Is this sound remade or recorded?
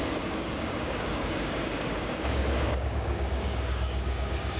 remade